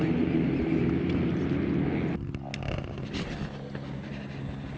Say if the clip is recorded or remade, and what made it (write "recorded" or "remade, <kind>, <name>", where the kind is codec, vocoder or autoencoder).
recorded